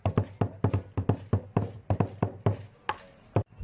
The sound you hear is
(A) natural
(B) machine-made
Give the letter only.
A